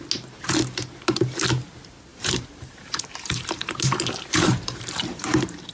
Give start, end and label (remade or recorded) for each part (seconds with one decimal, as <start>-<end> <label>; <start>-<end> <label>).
0.0-2.1 recorded; 2.1-5.7 remade